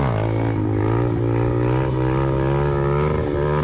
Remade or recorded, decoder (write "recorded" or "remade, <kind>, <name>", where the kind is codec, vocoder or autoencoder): recorded